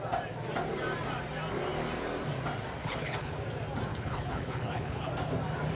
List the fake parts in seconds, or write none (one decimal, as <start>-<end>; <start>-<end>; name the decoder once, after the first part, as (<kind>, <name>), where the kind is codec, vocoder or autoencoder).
2.8-3.3 (codec, HILCodec); 3.9-5.1